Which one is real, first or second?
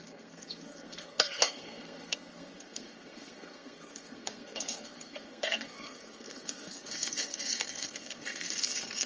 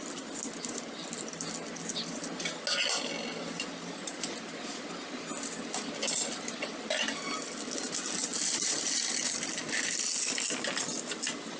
second